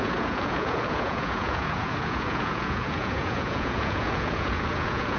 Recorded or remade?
remade